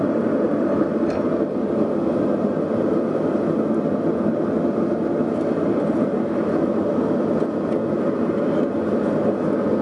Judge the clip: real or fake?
real